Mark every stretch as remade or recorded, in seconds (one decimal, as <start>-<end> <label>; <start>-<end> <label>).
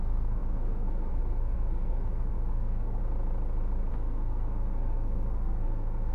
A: 0.0-3.0 remade; 3.0-3.9 recorded; 3.9-6.1 remade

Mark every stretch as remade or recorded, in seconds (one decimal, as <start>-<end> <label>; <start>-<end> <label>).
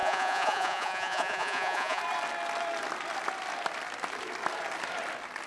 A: 0.0-2.0 remade; 2.0-5.5 recorded